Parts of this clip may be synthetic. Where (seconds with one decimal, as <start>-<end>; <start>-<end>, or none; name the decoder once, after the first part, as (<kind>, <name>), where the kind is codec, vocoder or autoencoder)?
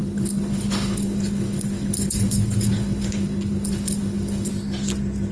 0.0-4.5 (codec, HILCodec)